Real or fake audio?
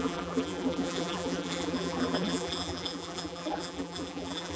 fake